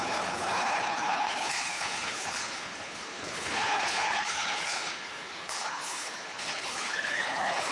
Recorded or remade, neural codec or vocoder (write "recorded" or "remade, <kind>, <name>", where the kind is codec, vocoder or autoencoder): remade, codec, HILCodec